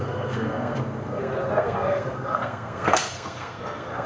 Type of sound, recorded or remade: remade